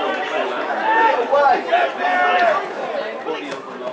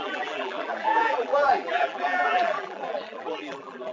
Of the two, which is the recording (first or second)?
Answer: first